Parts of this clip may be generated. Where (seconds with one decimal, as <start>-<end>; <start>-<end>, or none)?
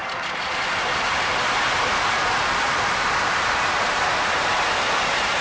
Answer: 2.1-5.4